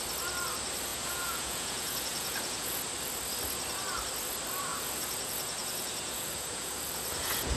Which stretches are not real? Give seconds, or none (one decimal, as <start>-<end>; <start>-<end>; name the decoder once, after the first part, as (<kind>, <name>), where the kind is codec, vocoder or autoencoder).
0.9-2.8 (vocoder, Vocos); 4.7-7.6